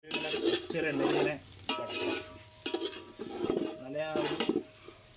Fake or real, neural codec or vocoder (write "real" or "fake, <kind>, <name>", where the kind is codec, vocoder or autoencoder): real